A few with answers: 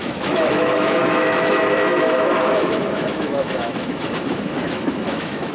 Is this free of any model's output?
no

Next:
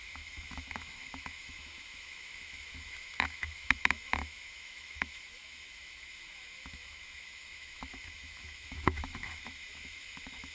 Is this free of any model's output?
no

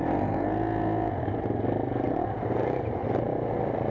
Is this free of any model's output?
yes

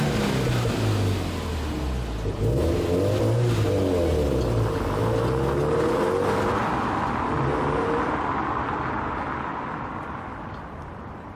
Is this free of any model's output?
yes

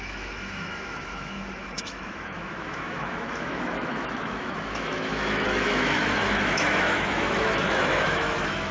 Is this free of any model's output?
no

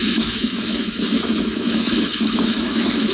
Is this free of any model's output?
no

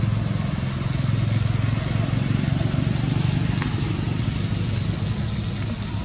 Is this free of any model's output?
yes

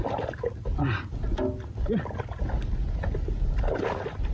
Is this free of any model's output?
yes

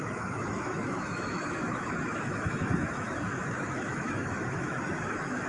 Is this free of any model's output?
no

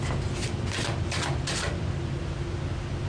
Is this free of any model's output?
yes